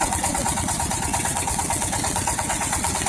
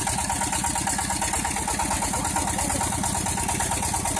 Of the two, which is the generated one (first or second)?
first